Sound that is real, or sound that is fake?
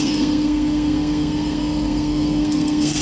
fake